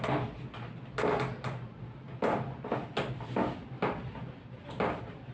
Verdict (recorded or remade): recorded